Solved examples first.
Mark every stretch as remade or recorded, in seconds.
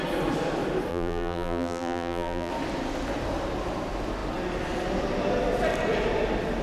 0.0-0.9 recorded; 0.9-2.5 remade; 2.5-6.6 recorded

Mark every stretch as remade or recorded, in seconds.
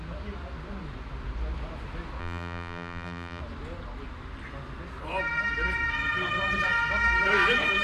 0.0-2.2 recorded; 2.2-3.4 remade; 3.4-7.8 recorded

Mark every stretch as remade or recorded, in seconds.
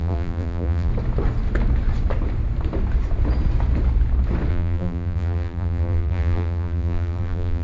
0.0-0.9 remade; 0.9-4.5 recorded; 4.5-7.6 remade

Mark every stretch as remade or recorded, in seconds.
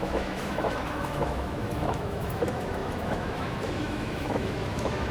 0.0-5.1 remade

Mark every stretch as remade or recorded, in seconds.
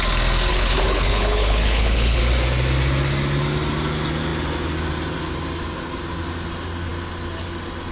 0.0-0.5 recorded; 0.5-2.2 remade; 2.2-7.9 recorded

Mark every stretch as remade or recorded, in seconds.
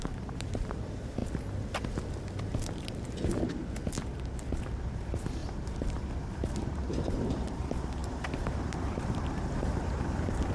0.0-1.2 remade; 1.2-4.6 recorded; 4.6-10.5 remade